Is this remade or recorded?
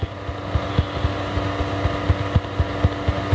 recorded